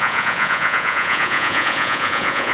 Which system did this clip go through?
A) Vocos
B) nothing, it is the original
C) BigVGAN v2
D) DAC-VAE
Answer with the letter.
A